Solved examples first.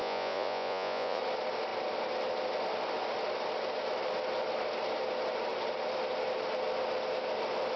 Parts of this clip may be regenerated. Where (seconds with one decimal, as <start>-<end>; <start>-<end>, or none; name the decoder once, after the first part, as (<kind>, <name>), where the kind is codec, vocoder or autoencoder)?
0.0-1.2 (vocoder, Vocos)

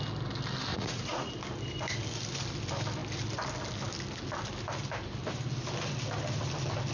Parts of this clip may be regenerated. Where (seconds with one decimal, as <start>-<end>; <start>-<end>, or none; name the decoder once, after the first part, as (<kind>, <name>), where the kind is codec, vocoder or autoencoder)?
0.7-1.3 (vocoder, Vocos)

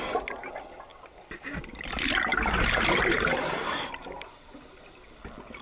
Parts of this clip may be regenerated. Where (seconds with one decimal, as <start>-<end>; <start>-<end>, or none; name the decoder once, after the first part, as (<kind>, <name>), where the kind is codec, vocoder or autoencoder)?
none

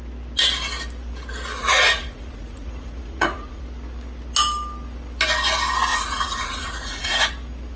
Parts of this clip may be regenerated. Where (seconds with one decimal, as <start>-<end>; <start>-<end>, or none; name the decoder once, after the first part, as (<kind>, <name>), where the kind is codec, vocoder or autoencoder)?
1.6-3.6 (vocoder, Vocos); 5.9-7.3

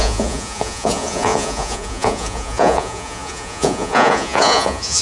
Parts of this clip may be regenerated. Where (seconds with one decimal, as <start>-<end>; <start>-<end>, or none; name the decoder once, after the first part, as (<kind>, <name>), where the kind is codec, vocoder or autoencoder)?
0.0-5.0 (vocoder, Vocos)

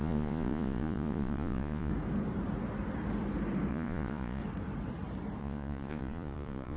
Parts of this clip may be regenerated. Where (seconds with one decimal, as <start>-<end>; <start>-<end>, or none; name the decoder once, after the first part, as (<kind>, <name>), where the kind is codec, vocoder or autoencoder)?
0.0-1.9 (vocoder, Vocos); 3.7-4.4; 5.4-6.8

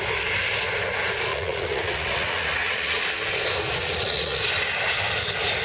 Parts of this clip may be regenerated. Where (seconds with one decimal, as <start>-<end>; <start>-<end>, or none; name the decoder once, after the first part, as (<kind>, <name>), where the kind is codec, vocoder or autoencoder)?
1.3-3.0 (vocoder, Vocos); 3.8-4.4